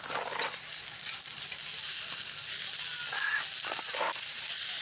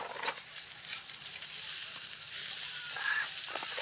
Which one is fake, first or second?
second